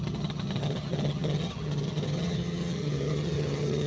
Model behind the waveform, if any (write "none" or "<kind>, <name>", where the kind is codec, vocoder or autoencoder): vocoder, HiFi-GAN